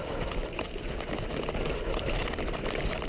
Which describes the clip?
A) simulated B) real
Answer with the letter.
B